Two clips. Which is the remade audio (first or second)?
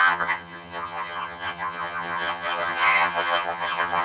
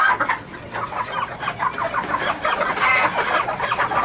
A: first